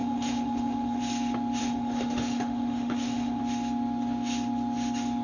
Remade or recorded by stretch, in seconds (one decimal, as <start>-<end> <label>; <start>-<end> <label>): 0.0-1.0 remade; 1.0-1.6 recorded; 1.6-3.4 remade; 3.4-5.2 recorded